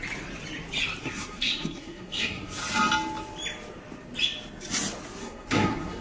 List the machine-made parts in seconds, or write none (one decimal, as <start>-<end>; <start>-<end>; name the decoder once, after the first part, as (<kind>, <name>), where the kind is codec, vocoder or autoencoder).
1.0-2.6 (codec, SNAC); 5.2-6.0